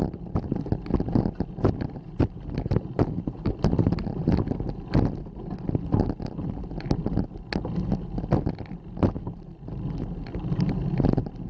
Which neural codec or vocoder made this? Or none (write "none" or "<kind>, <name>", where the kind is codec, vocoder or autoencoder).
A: none